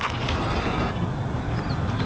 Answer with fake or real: real